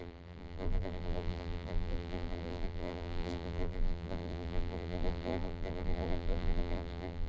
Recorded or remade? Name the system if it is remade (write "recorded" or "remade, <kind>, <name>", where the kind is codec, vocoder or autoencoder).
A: remade, vocoder, BigVGAN v2